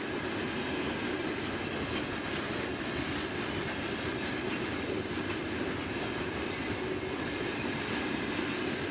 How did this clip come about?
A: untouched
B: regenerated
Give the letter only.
A